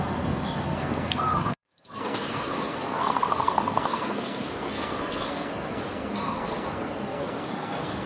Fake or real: fake